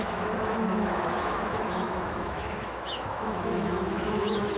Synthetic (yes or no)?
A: yes